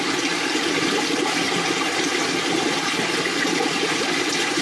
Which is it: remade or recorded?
recorded